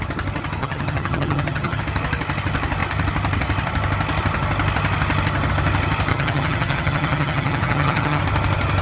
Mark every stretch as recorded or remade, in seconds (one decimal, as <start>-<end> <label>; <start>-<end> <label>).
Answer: 0.0-0.6 recorded; 0.6-1.8 remade; 1.8-6.1 recorded; 6.1-8.2 remade; 8.2-8.8 recorded